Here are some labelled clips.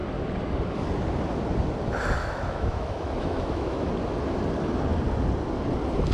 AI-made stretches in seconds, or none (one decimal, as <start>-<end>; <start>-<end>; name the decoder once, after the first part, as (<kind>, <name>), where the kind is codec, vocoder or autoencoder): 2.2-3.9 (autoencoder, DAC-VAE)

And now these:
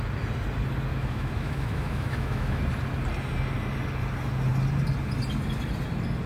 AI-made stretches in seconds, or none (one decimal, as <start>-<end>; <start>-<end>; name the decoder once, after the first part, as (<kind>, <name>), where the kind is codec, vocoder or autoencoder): 0.9-2.6 (autoencoder, DAC-VAE)

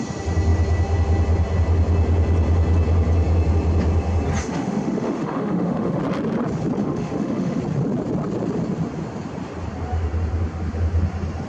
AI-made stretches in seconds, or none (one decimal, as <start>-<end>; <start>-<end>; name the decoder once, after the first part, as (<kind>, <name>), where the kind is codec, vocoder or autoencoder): 4.4-6.0 (autoencoder, DAC-VAE); 6.8-7.6

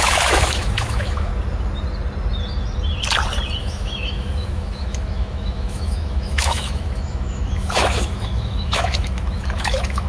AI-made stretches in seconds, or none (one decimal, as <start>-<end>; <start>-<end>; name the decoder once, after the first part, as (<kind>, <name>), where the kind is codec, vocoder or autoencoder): 0.0-1.3 (autoencoder, DAC-VAE); 3.6-10.1

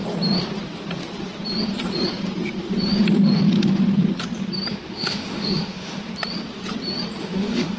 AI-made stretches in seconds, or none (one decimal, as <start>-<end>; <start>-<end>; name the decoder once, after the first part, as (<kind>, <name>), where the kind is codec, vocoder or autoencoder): 4.7-6.1 (autoencoder, DAC-VAE); 7.2-7.8

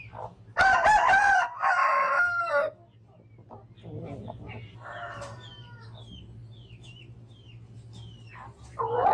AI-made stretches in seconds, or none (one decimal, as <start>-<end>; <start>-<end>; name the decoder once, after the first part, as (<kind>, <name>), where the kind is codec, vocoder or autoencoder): 1.8-2.4 (autoencoder, DAC-VAE)

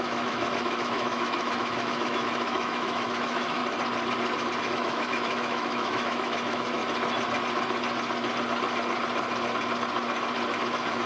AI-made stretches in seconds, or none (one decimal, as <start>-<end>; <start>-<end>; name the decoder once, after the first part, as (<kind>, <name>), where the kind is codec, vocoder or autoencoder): 0.0-3.6 (autoencoder, DAC-VAE); 4.6-6.8; 10.6-11.1

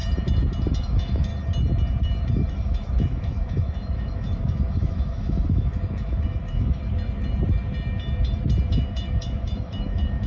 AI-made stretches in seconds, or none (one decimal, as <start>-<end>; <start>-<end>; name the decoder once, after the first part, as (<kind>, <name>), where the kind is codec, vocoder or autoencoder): 0.7-1.3 (autoencoder, DAC-VAE); 2.3-6.8; 8.7-10.3